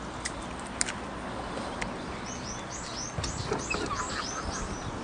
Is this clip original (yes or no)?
yes